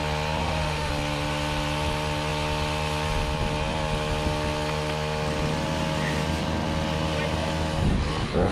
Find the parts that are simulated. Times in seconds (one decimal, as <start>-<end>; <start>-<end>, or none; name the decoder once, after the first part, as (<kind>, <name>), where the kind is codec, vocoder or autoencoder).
0.4-0.9 (autoencoder, DAC-VAE)